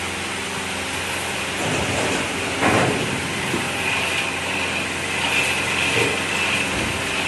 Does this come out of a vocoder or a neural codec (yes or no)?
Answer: no